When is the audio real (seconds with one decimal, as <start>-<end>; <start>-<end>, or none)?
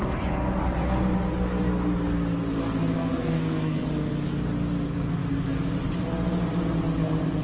0.0-3.0; 3.8-7.4